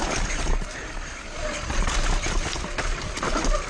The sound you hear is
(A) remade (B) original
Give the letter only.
A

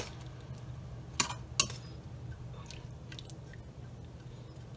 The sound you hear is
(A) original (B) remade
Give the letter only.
A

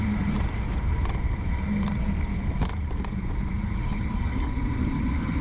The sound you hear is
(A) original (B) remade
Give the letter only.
B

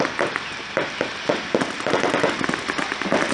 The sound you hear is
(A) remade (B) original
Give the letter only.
A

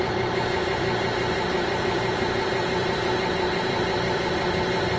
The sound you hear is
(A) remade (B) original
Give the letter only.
A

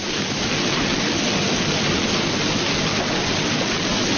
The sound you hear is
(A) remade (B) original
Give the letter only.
B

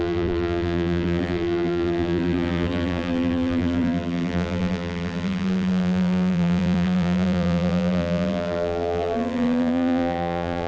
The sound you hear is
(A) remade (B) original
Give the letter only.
A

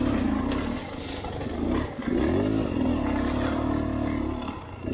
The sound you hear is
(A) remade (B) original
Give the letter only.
B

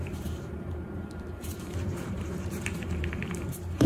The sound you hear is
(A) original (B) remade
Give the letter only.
B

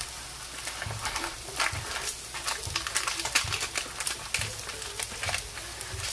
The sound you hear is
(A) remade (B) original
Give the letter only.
B